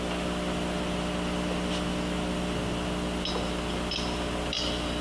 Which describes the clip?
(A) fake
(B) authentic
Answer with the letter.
B